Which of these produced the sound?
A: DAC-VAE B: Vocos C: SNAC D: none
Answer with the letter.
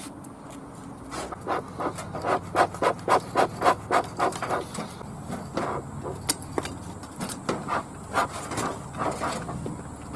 D